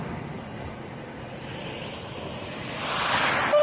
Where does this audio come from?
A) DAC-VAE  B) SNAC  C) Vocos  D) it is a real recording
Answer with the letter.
D